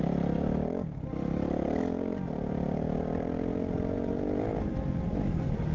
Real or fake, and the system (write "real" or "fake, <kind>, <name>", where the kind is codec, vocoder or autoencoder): real